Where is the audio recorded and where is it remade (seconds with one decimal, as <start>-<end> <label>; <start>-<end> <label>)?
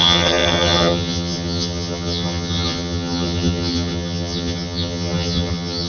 0.0-5.9 remade